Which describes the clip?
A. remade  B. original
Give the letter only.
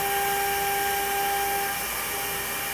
B